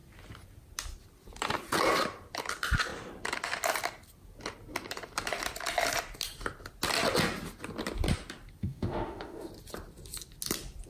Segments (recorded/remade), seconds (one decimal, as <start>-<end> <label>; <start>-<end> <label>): 0.0-8.6 recorded; 8.6-9.5 remade; 9.5-10.9 recorded